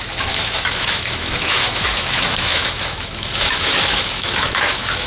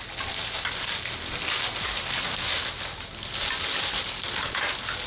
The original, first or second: second